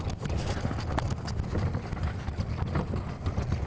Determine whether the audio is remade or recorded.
recorded